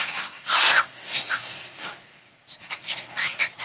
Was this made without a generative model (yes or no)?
no